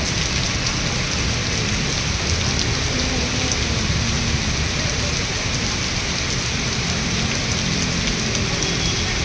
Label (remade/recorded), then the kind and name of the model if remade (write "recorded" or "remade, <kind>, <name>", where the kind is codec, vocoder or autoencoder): recorded